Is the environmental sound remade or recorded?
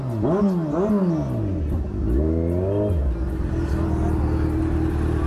recorded